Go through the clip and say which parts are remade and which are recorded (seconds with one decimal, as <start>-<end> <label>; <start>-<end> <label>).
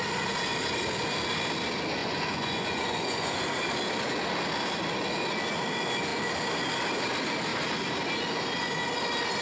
0.0-2.0 recorded; 2.0-3.4 remade; 3.4-9.4 recorded